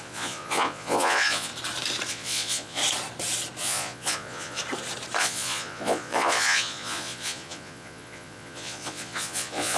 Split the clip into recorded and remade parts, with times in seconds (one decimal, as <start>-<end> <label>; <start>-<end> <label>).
0.0-1.5 remade; 1.5-2.1 recorded; 2.1-2.8 remade; 2.8-3.6 recorded; 3.6-4.6 remade; 4.6-5.2 recorded; 5.2-9.8 remade